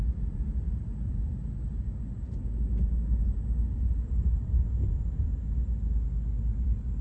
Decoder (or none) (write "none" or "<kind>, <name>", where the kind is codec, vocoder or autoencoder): none